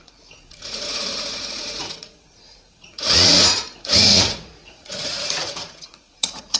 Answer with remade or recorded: remade